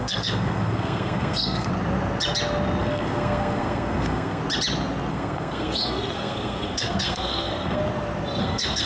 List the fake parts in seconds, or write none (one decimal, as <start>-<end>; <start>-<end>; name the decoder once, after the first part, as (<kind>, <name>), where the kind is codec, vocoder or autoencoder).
0.0-1.7 (codec, SNAC); 2.8-4.4; 5.1-7.8; 8.4-8.9

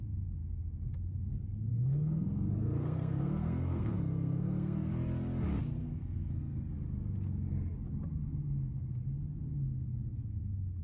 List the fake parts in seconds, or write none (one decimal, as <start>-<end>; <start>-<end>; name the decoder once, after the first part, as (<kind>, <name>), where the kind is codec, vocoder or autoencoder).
1.7-4.9 (codec, SNAC); 5.8-6.7